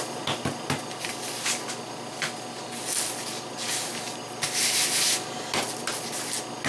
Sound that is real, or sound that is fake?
real